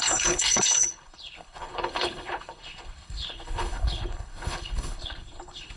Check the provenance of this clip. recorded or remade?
remade